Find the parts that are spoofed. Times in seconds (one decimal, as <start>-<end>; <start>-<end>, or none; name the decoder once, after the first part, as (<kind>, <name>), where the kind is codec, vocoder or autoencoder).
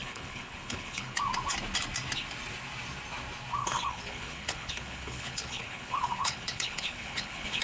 0.0-1.2 (codec, HILCodec); 3.6-7.6